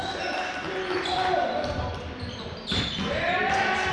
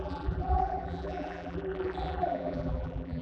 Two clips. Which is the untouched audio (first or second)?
first